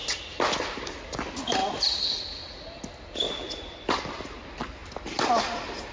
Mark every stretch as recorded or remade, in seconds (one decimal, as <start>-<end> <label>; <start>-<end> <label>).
0.0-5.9 recorded